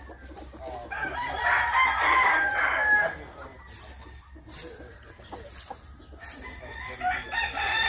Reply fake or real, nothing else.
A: real